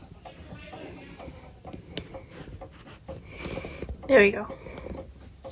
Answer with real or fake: real